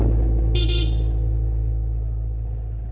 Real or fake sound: real